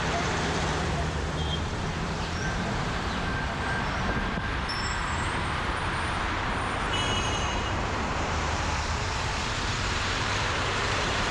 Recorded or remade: remade